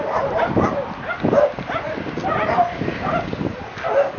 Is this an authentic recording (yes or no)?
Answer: yes